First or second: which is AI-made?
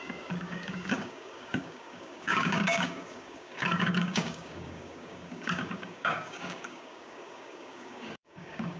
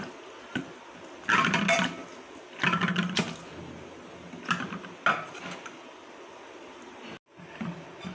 first